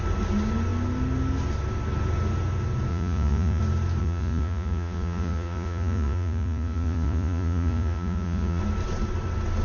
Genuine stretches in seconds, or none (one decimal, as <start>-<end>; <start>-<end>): 0.0-2.9; 3.6-4.0; 8.6-9.6